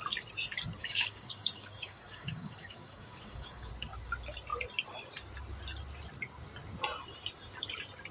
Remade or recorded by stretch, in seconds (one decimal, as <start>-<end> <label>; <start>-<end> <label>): 0.0-0.8 recorded; 0.8-3.7 remade; 3.7-8.1 recorded